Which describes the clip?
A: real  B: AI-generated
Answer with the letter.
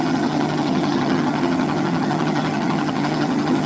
B